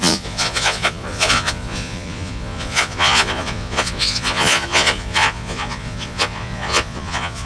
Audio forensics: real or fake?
fake